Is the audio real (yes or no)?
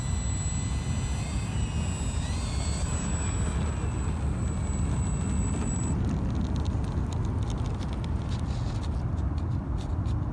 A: yes